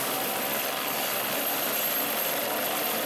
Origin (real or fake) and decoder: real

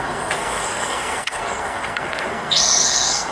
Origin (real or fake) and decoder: fake, codec, SNAC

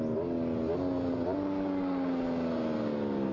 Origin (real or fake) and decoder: real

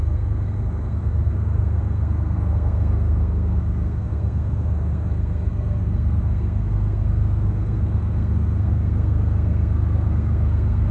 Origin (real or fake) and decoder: fake, codec, SNAC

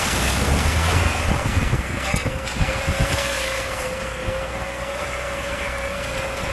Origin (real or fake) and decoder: fake, codec, SNAC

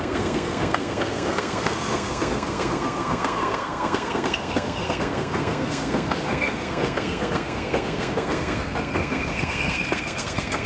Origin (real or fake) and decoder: fake, codec, SNAC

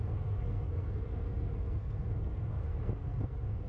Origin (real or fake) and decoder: fake, codec, SNAC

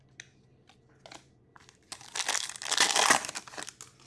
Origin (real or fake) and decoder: real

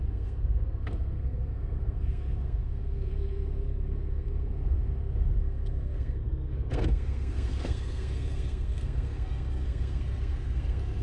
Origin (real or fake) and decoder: fake, codec, SNAC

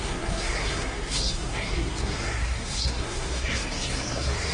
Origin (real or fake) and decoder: fake, codec, SNAC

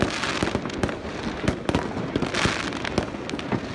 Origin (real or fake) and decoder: real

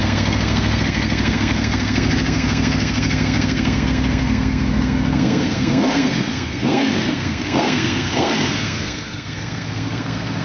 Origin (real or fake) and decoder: fake, codec, SNAC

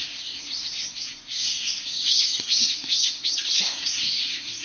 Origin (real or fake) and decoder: fake, codec, SNAC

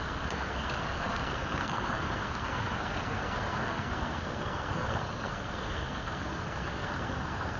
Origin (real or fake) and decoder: fake, codec, SNAC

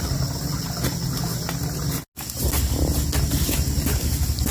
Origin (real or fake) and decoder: real